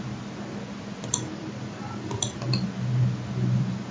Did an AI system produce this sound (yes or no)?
no